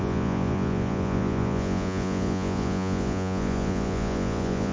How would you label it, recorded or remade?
remade